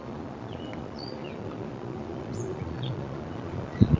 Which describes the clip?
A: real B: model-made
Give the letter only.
B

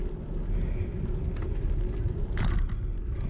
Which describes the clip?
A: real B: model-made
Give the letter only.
A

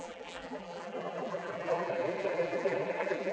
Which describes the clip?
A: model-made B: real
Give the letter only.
A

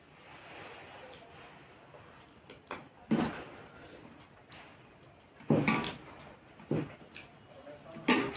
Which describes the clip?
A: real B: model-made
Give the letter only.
A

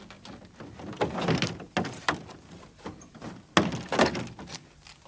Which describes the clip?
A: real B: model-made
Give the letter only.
A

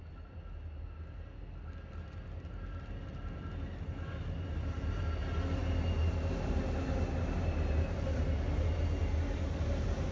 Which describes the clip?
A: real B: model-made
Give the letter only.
A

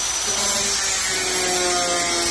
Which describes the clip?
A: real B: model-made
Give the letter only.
A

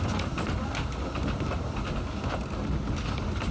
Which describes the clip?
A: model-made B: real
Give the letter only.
B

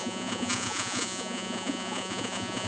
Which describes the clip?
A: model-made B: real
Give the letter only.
A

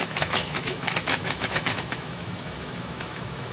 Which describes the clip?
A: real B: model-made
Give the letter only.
B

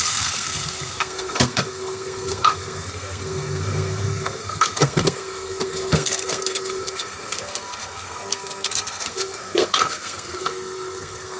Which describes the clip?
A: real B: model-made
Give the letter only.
B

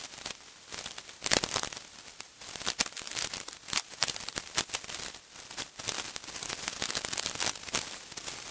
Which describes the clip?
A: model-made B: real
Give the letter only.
B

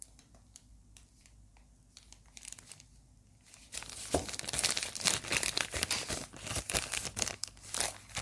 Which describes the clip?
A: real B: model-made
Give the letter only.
A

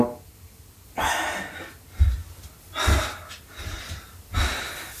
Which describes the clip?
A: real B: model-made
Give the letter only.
A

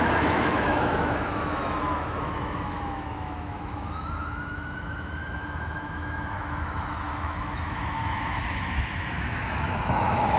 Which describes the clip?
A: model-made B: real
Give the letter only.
A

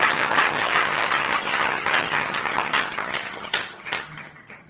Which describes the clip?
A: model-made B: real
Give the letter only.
A